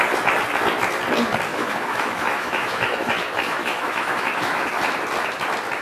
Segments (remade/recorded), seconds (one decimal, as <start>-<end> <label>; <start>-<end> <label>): 0.0-1.5 recorded; 1.5-4.7 remade; 4.7-5.8 recorded